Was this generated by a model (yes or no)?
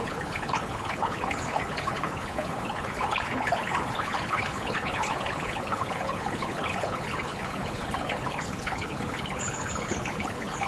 yes